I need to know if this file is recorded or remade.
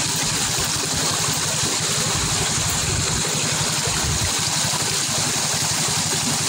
recorded